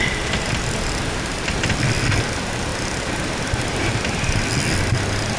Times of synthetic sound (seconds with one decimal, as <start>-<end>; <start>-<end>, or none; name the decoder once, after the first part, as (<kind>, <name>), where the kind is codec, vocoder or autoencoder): none